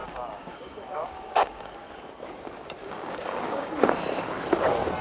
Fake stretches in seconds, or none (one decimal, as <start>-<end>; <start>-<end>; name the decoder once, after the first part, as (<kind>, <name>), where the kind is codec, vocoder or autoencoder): 0.0-1.9 (codec, DAC); 2.8-3.7